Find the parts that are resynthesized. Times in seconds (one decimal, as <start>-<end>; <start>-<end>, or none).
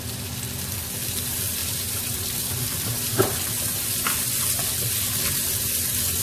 1.6-4.4